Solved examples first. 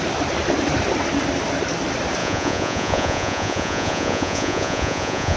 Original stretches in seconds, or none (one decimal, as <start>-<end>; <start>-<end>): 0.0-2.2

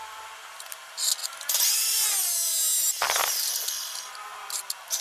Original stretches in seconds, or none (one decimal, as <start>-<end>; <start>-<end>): 0.0-5.0

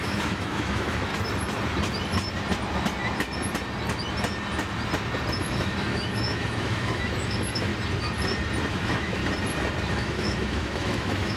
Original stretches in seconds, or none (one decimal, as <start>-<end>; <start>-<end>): 1.1-5.4; 7.7-8.7; 9.2-9.9

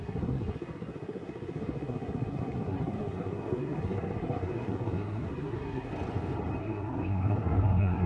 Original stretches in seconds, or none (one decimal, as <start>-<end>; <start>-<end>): 5.9-6.6